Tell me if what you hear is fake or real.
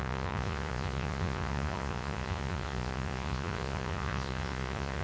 fake